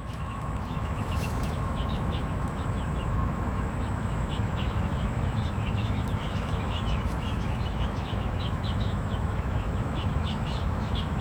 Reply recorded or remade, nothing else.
remade